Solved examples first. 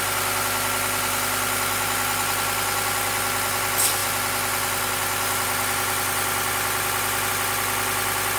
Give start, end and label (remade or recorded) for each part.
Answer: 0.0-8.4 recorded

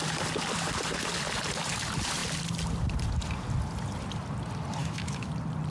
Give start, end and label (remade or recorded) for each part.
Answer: 0.0-4.8 recorded; 4.8-5.3 remade; 5.3-5.7 recorded

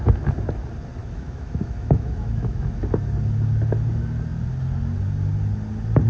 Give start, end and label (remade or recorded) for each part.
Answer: 0.0-1.0 recorded; 1.0-2.8 remade; 2.8-6.1 recorded

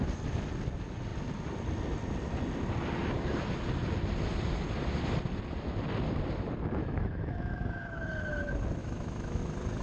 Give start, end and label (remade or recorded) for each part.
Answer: 0.0-6.8 recorded; 6.8-8.1 remade; 8.1-8.8 recorded; 8.8-9.4 remade; 9.4-9.8 recorded

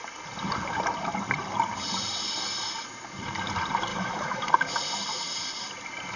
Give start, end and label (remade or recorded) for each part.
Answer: 0.0-3.9 recorded; 3.9-4.5 remade; 4.5-6.2 recorded

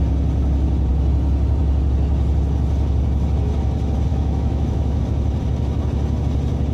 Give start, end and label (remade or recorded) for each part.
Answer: 0.0-4.1 recorded; 4.1-5.0 remade; 5.0-6.7 recorded